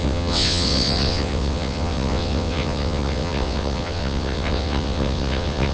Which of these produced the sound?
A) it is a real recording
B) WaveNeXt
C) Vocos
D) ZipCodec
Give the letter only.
B